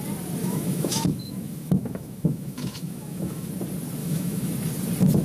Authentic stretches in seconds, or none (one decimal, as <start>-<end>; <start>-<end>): 0.0-0.4; 3.5-4.0; 4.5-5.2